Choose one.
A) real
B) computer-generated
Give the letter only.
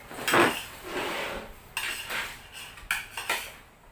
A